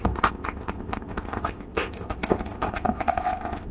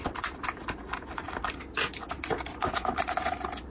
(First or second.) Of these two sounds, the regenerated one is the first